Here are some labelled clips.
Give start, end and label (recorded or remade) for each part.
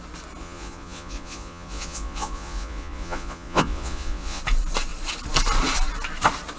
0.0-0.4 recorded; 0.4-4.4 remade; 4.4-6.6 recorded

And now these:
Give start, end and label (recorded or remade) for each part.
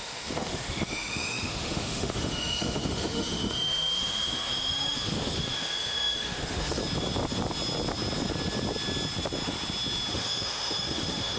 0.0-6.8 remade; 6.8-10.1 recorded; 10.1-11.4 remade